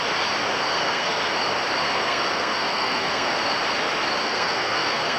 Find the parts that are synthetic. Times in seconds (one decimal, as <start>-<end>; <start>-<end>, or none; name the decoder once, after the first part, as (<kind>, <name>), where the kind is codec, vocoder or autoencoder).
0.7-1.2 (codec, SNAC); 1.8-3.3; 4.2-5.2